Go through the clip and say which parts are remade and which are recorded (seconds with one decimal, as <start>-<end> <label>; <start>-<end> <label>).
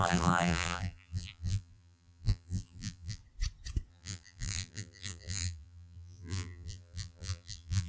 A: 0.0-3.2 remade; 3.2-3.9 recorded; 3.9-7.9 remade